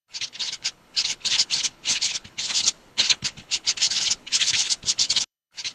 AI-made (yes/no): yes